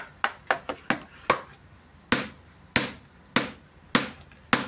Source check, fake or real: real